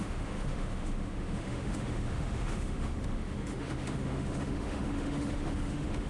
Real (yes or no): no